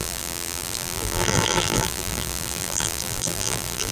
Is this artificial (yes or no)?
yes